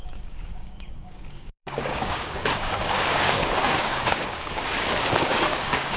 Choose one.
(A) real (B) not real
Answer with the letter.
B